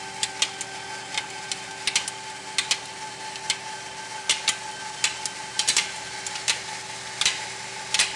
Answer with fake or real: real